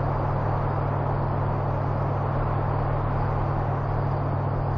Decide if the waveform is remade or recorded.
recorded